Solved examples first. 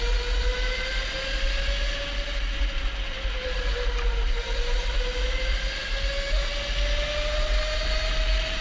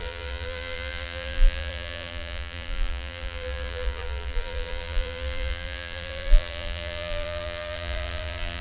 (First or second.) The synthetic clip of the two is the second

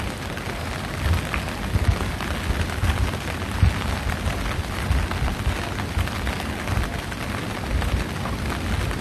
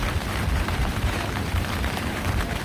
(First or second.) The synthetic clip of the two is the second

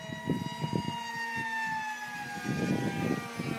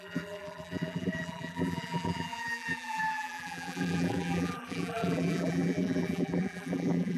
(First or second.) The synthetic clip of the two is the second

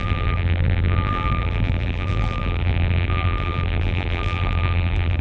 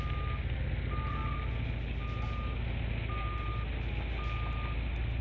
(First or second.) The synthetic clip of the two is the first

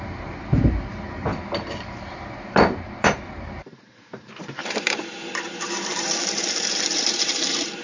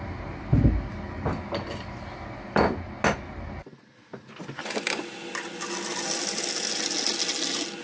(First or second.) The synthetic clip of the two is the first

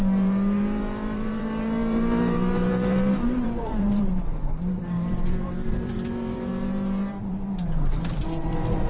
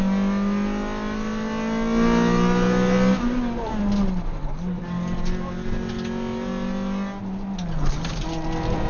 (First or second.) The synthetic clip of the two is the first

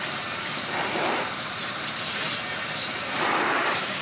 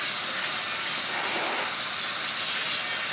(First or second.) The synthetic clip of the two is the first